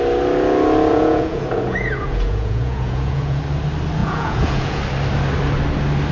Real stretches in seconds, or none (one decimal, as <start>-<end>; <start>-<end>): 0.0-0.9; 3.4-4.0; 4.8-6.1